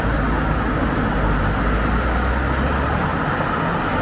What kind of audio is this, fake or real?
real